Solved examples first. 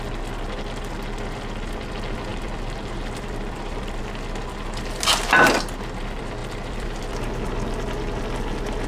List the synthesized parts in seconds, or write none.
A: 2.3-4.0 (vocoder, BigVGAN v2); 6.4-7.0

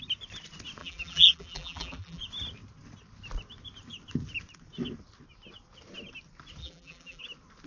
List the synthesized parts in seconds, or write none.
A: 0.8-2.2 (vocoder, BigVGAN v2); 6.6-7.2